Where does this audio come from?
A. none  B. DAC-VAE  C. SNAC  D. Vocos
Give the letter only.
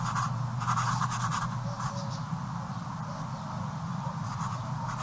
A